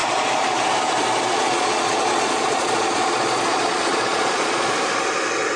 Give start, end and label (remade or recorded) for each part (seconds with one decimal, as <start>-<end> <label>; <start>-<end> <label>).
0.0-0.6 remade; 0.6-1.3 recorded; 1.3-4.7 remade; 4.7-5.6 recorded